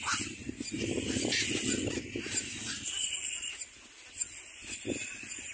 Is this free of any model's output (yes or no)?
yes